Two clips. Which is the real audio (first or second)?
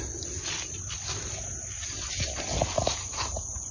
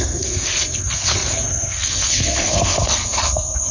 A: first